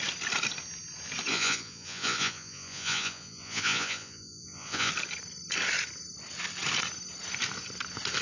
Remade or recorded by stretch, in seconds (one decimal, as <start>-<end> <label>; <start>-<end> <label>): 0.0-1.3 recorded; 1.3-4.9 remade; 4.9-8.2 recorded